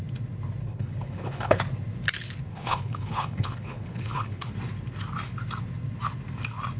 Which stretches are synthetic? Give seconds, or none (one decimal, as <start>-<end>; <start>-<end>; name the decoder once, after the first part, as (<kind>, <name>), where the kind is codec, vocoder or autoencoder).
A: 0.6-1.6 (codec, HILCodec); 2.5-4.5